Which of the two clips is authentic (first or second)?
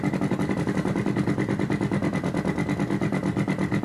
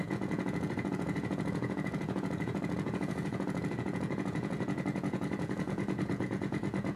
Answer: first